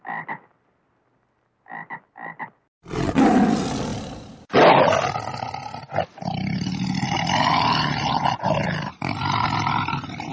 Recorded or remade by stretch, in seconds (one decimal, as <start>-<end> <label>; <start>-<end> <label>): 0.0-10.3 recorded